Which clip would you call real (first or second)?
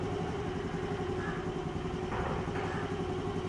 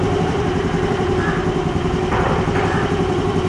first